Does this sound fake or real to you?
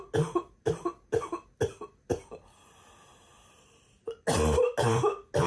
real